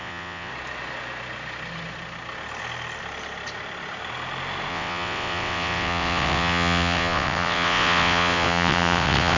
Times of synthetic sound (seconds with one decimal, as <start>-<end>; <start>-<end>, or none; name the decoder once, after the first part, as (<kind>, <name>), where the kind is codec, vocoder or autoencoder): 0.0-0.5 (vocoder, WaveNeXt); 4.7-9.4